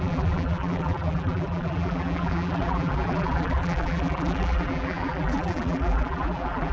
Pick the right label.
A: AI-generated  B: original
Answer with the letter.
A